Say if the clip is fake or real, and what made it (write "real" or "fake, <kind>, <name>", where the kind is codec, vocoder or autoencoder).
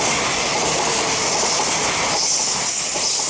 real